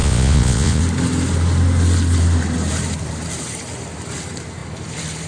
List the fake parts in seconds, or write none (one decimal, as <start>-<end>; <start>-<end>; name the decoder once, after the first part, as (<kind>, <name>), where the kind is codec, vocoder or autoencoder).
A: 0.0-0.8 (vocoder, Vocos)